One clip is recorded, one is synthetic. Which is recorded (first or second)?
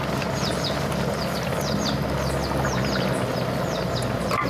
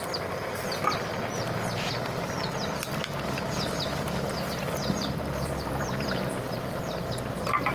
first